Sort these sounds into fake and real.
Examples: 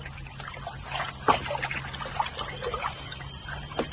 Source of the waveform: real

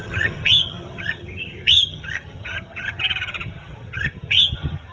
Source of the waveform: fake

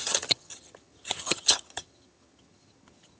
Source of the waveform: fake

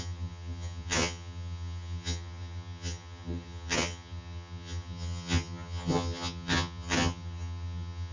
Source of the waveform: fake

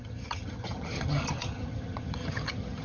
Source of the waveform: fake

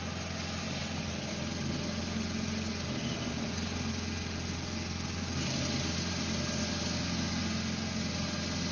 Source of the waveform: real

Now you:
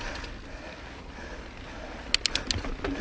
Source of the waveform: real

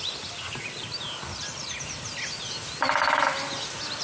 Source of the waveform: real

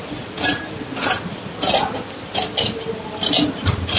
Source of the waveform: real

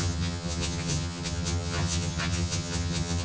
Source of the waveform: fake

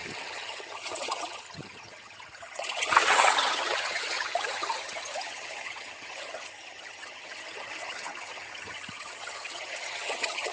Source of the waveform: fake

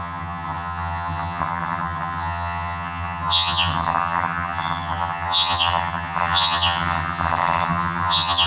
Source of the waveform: fake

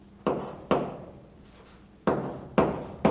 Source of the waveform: real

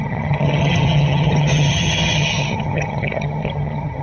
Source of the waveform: fake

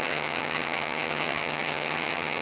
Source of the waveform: fake